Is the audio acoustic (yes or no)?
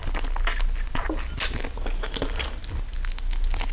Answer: yes